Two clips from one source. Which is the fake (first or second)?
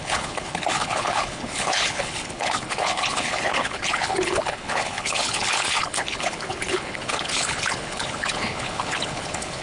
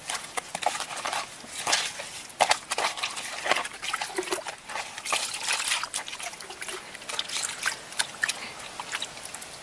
first